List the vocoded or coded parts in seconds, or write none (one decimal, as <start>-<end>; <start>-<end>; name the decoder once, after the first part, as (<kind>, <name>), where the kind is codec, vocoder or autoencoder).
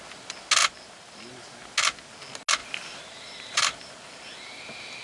0.6-1.3 (vocoder, BigVGAN v2); 2.6-4.4